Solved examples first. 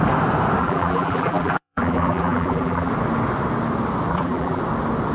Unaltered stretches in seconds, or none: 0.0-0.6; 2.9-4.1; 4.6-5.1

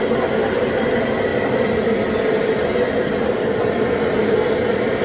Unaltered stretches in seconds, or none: 0.0-5.0